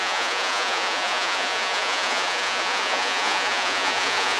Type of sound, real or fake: fake